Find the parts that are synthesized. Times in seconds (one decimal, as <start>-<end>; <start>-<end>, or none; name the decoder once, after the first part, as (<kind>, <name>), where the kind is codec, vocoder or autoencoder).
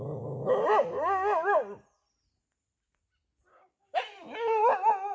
3.5-4.0 (codec, DAC)